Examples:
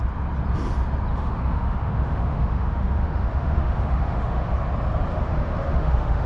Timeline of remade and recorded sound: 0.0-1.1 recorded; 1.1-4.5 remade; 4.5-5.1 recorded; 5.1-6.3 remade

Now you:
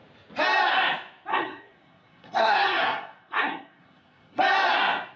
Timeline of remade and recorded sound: 0.0-1.3 recorded; 1.3-4.4 remade; 4.4-5.2 recorded

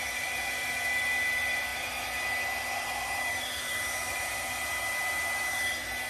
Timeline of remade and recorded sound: 0.0-6.1 recorded

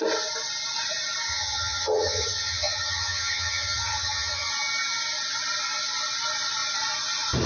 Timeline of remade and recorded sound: 0.0-1.3 recorded; 1.3-4.5 remade; 4.5-7.5 recorded

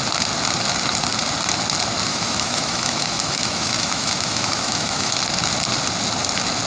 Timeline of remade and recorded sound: 0.0-2.1 recorded; 2.1-5.2 remade; 5.2-6.7 recorded

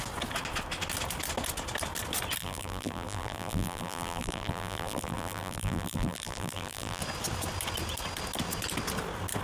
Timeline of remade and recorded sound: 0.0-2.4 recorded; 2.4-7.0 remade; 7.0-9.4 recorded

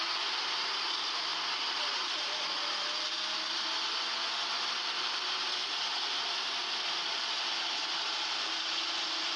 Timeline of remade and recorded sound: 0.0-9.4 recorded

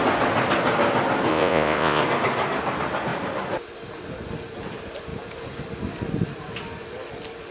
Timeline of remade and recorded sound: 0.0-1.3 recorded; 1.3-2.0 remade; 2.0-7.5 recorded